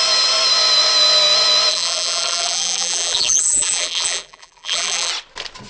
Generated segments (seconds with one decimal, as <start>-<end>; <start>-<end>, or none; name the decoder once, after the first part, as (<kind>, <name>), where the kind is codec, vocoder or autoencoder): 1.7-5.1 (vocoder, BigVGAN v2)